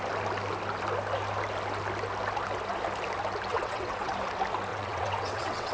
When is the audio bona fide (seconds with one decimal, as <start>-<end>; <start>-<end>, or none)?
0.0-3.5; 4.1-4.7